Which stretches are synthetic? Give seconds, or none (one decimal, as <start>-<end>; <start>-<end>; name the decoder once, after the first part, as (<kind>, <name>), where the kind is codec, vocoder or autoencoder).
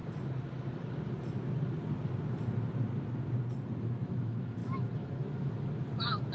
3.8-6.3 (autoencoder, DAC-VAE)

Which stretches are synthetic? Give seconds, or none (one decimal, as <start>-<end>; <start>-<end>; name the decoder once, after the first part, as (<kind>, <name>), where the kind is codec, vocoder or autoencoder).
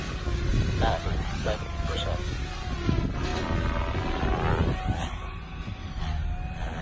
none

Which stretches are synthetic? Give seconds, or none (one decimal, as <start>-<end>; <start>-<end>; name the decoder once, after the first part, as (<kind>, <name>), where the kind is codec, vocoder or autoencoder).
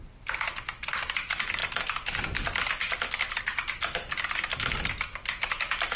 none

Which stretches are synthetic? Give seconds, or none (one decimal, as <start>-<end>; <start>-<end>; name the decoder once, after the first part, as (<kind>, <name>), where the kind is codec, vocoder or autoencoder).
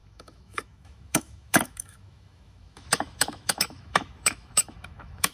0.0-5.3 (autoencoder, DAC-VAE)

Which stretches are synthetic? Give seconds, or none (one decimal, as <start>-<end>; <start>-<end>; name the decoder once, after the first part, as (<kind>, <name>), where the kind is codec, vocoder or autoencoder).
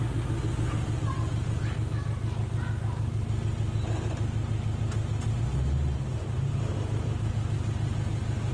6.1-7.3 (vocoder, BigVGAN v2)